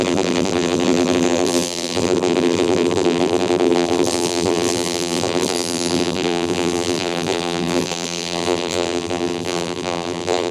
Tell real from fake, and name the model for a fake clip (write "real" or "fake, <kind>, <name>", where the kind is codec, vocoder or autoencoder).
fake, vocoder, BigVGAN v2